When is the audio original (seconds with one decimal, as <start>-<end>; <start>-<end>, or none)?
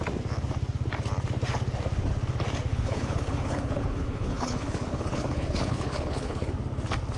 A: 0.0-2.7; 6.5-7.2